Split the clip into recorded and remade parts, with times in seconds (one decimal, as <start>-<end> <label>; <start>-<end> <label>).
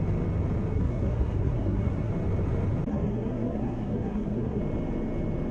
0.0-0.7 recorded; 0.7-2.1 remade; 2.1-2.9 recorded; 2.9-4.6 remade; 4.6-5.5 recorded